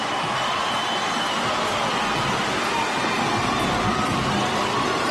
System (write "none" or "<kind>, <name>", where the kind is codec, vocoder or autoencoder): none